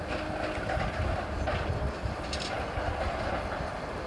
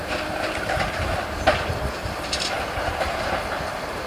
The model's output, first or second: second